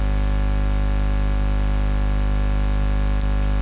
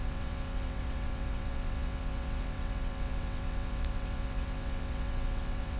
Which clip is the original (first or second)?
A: first